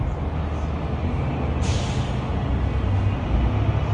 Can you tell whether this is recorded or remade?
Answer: recorded